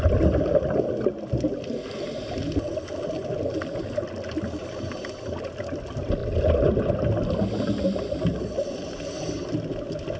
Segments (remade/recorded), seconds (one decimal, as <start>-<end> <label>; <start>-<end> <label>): 0.0-10.2 recorded